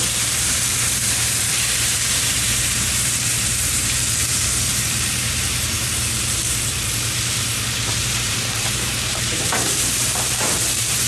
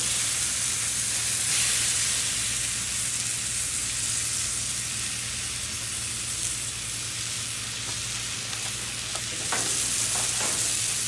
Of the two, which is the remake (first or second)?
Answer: first